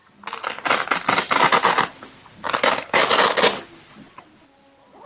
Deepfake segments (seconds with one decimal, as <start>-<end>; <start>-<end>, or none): none